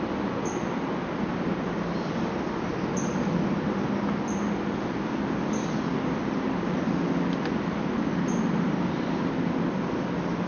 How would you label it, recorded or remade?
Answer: recorded